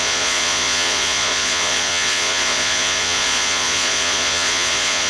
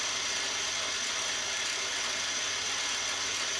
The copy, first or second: first